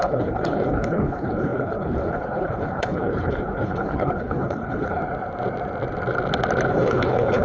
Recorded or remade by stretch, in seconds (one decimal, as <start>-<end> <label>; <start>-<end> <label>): 0.0-5.0 remade; 5.0-6.7 recorded; 6.7-7.4 remade